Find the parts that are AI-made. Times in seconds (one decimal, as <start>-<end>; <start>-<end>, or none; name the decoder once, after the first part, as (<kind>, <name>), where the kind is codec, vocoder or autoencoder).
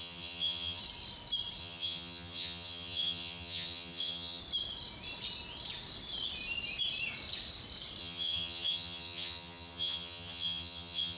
0.0-0.8 (vocoder, HiFi-GAN); 1.6-4.4; 8.0-11.2